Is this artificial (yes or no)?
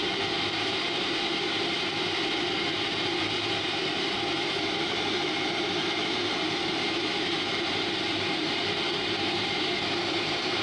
yes